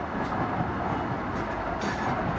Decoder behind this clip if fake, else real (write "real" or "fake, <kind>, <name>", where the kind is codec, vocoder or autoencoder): real